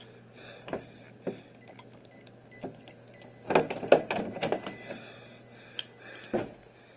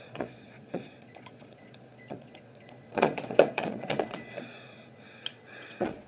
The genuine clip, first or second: first